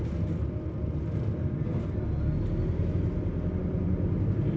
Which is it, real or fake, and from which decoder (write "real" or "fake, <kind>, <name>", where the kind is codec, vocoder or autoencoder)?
real